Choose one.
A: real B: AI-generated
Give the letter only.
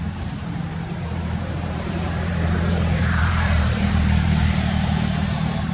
B